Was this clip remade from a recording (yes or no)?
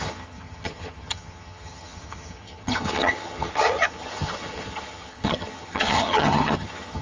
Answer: yes